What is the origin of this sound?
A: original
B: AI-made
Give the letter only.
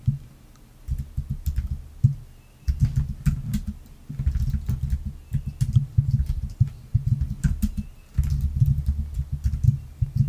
A